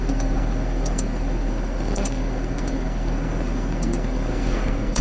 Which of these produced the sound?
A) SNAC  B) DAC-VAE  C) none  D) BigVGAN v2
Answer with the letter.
A